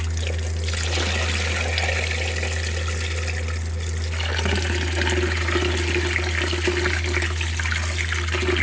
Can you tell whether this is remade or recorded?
recorded